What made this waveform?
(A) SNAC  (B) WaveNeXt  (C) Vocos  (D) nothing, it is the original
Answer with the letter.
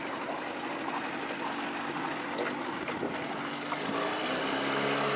D